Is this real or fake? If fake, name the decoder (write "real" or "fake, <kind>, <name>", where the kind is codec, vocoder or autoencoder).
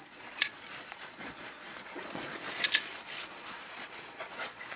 fake, vocoder, Vocos